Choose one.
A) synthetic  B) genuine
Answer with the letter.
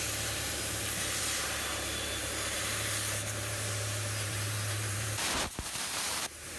A